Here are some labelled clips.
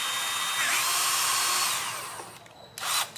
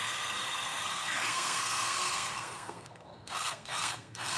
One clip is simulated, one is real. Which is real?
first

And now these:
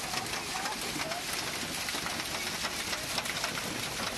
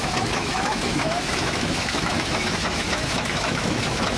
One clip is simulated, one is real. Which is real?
first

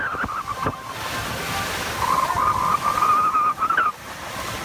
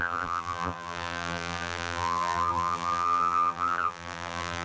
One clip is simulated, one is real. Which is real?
first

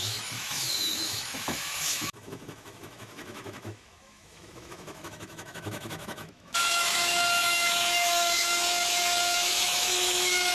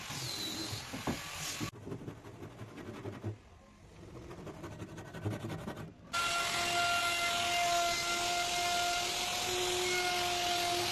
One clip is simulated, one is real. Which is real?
second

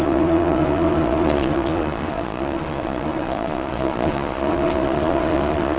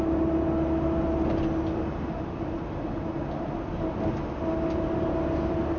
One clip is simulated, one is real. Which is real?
second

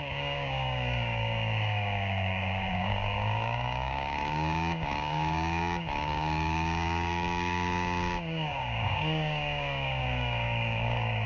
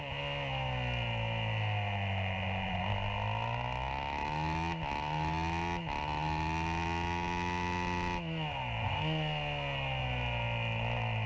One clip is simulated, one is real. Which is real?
second